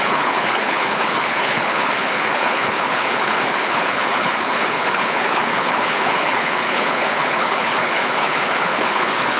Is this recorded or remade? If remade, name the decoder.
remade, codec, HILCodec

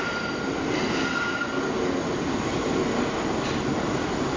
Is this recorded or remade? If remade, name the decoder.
recorded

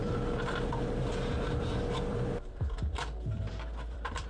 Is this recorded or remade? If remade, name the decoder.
remade, vocoder, BigVGAN v2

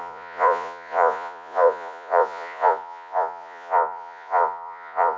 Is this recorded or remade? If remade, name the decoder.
remade, vocoder, Vocos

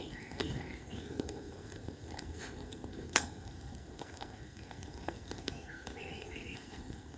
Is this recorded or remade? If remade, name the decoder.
remade, codec, SNAC